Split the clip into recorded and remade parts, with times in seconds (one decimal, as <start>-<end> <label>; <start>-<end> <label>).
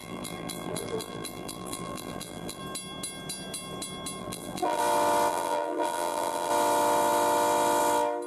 0.0-2.6 remade; 2.6-4.2 recorded; 4.2-4.8 remade; 4.8-5.3 recorded; 5.3-6.5 remade; 6.5-8.3 recorded